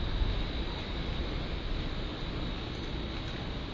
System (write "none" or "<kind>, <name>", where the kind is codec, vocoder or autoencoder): none